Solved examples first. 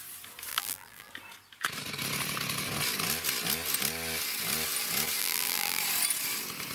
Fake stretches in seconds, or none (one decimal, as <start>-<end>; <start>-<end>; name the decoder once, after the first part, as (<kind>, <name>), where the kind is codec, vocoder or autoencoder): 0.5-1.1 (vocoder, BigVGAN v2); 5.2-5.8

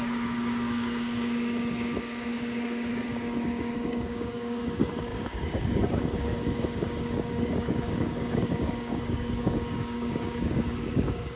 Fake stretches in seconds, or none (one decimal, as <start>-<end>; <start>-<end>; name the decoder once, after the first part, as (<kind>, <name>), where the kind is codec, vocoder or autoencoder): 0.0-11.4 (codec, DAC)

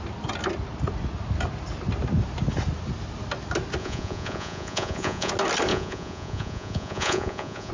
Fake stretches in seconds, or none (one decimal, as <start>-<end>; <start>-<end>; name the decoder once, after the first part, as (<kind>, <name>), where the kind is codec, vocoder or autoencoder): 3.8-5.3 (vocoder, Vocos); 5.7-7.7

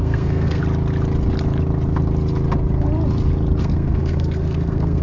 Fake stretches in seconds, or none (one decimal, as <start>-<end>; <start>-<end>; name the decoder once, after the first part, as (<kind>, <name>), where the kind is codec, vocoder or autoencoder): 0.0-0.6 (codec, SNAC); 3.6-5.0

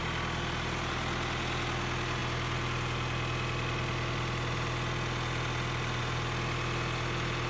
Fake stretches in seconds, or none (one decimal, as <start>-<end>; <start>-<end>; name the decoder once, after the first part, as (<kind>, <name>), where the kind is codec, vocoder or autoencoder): none

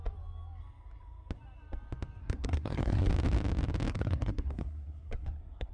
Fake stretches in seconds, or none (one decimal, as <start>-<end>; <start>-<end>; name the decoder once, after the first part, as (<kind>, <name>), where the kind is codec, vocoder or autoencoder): 2.2-3.1 (codec, SNAC); 3.9-5.7